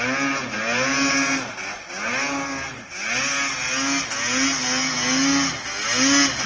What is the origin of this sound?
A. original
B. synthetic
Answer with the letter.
A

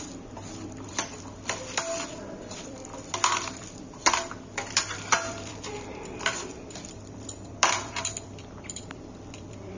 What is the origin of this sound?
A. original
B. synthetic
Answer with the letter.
B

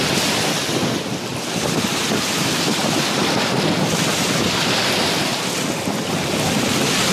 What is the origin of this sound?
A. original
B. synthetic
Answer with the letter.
B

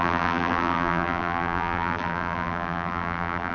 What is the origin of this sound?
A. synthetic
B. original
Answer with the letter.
A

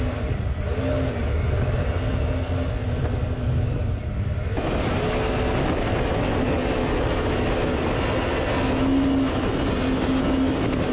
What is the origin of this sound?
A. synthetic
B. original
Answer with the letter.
B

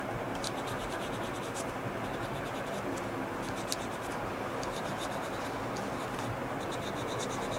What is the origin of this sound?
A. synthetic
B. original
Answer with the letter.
B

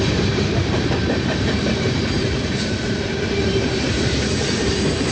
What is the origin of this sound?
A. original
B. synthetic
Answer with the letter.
B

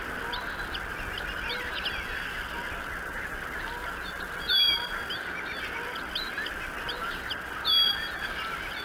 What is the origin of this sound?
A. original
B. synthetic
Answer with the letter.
A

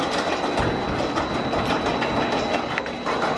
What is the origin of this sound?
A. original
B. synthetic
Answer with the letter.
A